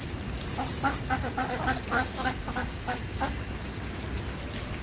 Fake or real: real